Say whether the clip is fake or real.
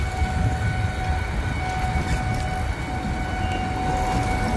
real